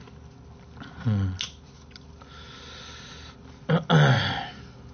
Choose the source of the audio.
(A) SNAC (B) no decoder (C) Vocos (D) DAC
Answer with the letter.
B